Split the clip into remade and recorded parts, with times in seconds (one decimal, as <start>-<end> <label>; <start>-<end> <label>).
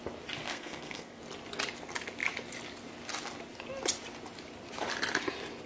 0.0-0.4 recorded; 0.4-1.2 remade; 1.2-5.7 recorded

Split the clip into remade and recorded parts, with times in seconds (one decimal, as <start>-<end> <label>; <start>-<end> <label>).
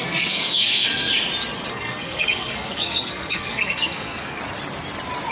0.0-1.1 remade; 1.1-1.7 recorded; 1.7-4.4 remade; 4.4-5.3 recorded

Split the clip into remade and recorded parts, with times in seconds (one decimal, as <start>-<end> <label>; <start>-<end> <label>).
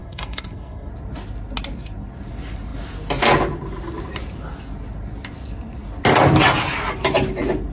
0.0-0.9 remade; 0.9-7.7 recorded